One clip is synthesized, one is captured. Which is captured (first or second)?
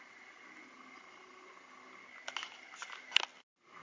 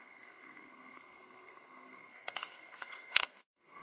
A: first